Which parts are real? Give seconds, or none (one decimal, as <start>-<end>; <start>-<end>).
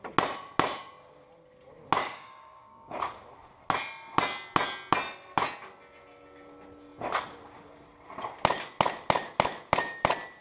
0.0-2.0; 3.0-10.4